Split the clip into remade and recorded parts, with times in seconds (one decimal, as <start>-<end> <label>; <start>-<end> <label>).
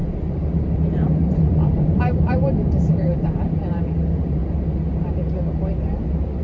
0.0-3.8 remade; 3.8-6.4 recorded